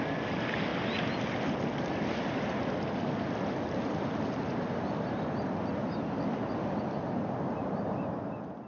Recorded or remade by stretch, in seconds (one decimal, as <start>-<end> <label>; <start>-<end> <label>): 0.0-8.7 recorded